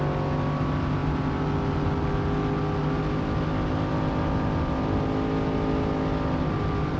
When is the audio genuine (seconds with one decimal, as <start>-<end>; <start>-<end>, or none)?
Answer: 0.0-7.0